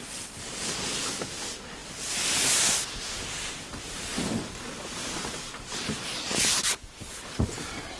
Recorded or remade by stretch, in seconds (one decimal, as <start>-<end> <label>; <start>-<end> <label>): 0.0-8.0 recorded